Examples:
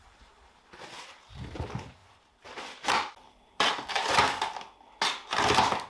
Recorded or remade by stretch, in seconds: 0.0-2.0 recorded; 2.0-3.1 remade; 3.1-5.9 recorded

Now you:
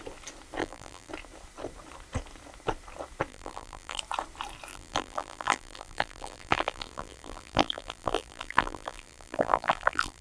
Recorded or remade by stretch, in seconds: 0.0-0.6 recorded; 0.6-1.1 remade; 1.1-3.3 recorded; 3.3-4.0 remade; 4.0-4.7 recorded; 4.7-10.2 remade

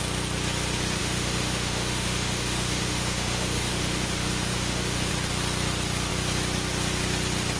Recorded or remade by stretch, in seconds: 0.0-1.0 recorded; 1.0-5.1 remade; 5.1-7.6 recorded

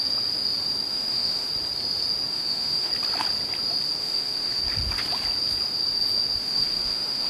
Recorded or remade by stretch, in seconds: 0.0-0.9 recorded; 0.9-1.5 remade; 1.5-2.3 recorded; 2.3-2.9 remade; 2.9-4.0 recorded; 4.0-4.6 remade; 4.6-6.4 recorded; 6.4-7.3 remade

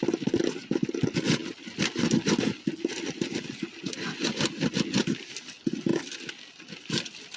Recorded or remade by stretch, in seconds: 0.0-7.4 recorded

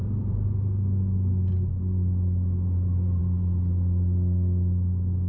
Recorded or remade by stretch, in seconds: 0.0-5.3 recorded

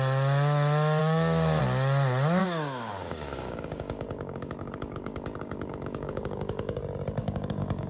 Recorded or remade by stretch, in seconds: 0.0-1.0 recorded; 1.0-1.6 remade; 1.6-2.4 recorded; 2.4-6.8 remade; 6.8-7.2 recorded; 7.2-7.9 remade